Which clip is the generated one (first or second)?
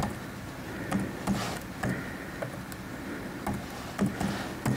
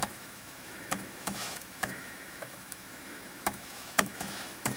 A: second